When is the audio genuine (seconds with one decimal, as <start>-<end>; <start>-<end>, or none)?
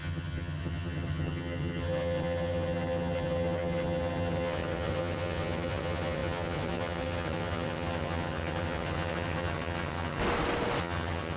10.2-10.8